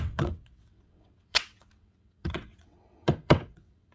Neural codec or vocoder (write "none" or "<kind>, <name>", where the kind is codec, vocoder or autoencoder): vocoder, WaveNeXt